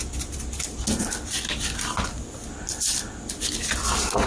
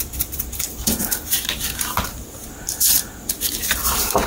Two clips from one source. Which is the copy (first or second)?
second